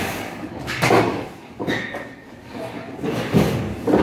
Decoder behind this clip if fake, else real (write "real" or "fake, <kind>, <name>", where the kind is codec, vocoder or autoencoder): fake, codec, DAC